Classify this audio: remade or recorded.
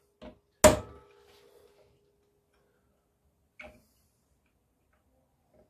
recorded